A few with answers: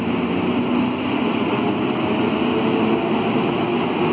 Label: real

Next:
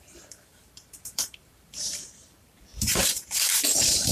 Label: fake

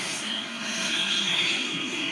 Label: fake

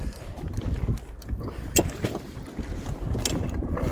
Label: real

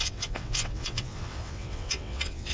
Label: fake